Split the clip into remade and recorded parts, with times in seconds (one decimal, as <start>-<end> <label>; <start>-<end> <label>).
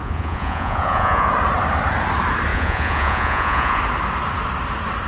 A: 0.0-1.3 remade; 1.3-2.5 recorded; 2.5-3.8 remade; 3.8-5.1 recorded